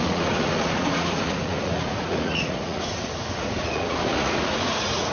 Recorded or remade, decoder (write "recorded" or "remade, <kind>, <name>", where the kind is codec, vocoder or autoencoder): remade, vocoder, Vocos